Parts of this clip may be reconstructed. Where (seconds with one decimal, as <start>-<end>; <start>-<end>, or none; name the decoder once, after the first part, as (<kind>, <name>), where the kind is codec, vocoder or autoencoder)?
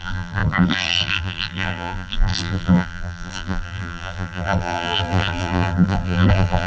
0.0-6.7 (vocoder, BigVGAN v2)